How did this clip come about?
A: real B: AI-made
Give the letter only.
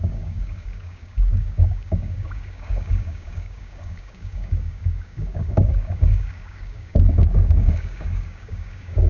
B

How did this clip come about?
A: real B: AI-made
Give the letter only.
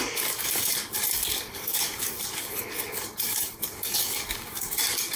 B